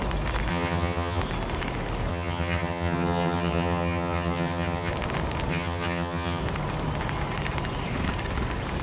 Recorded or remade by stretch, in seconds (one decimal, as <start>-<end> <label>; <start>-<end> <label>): 0.0-0.5 recorded; 0.5-1.2 remade; 1.2-2.1 recorded; 2.1-4.9 remade; 4.9-5.5 recorded; 5.5-6.4 remade; 6.4-8.8 recorded